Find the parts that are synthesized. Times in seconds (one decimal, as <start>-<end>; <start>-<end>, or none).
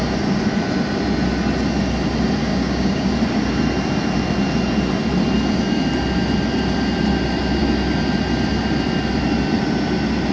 2.5-3.1